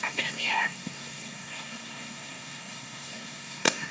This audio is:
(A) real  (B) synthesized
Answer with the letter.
B